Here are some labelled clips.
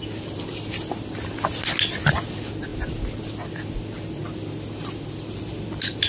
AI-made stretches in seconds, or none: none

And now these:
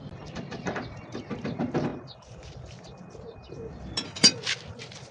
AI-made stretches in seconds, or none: none

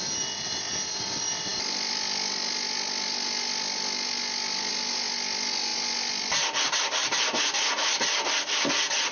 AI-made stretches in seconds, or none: 7.0-8.7 (vocoder, BigVGAN v2)

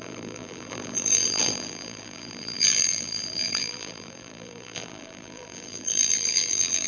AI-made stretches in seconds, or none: 0.0-6.9 (vocoder, BigVGAN v2)

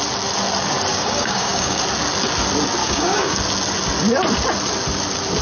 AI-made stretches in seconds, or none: 0.9-1.8 (codec, DAC); 2.8-3.4